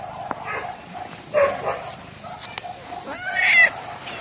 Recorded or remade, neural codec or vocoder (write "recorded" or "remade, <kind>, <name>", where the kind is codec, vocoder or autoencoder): recorded